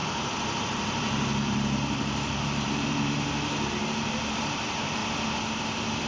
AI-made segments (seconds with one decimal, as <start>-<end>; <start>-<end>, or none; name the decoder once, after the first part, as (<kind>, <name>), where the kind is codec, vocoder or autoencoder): 0.0-5.0 (vocoder, BigVGAN v2)